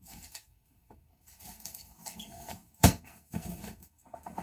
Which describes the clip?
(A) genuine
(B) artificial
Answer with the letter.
B